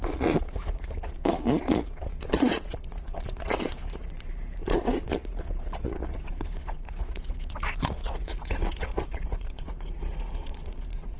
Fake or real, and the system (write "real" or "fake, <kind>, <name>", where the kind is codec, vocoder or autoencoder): fake, vocoder, Vocos